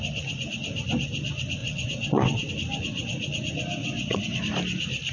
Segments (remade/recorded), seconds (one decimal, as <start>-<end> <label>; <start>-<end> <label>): 0.0-1.6 recorded; 1.6-2.5 remade; 2.5-3.8 recorded; 3.8-4.4 remade; 4.4-5.1 recorded